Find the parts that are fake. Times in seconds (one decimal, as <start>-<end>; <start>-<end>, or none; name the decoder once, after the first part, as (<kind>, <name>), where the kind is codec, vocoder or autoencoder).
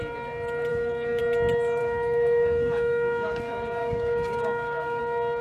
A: 0.7-1.2 (codec, DAC); 1.8-5.0